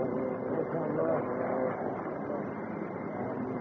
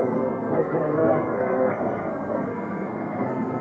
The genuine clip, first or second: first